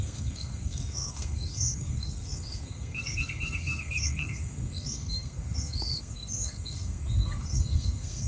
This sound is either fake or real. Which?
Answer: fake